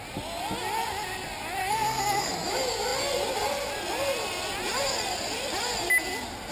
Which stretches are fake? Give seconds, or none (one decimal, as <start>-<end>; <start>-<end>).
1.6-2.3